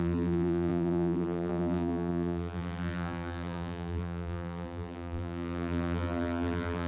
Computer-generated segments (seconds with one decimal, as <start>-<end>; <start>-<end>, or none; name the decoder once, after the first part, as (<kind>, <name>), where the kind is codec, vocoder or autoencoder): 0.0-6.9 (vocoder, BigVGAN v2)